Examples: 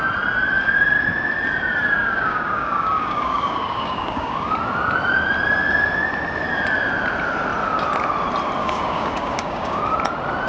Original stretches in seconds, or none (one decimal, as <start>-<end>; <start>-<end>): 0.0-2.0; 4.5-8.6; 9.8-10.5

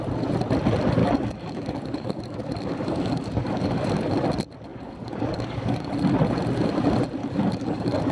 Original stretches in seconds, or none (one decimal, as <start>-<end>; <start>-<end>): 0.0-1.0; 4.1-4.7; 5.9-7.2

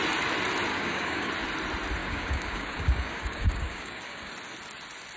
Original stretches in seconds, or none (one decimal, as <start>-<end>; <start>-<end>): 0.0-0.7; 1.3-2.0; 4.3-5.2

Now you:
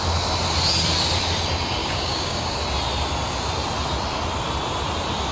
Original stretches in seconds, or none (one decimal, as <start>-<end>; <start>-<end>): 0.0-1.8; 2.6-5.3

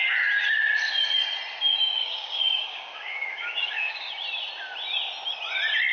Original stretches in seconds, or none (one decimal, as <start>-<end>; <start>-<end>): 0.0-2.0; 4.1-5.9